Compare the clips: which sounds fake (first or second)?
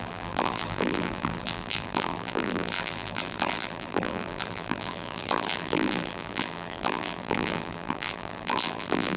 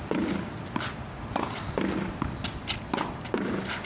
first